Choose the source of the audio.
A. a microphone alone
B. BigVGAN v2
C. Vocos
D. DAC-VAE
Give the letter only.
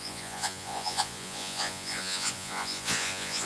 C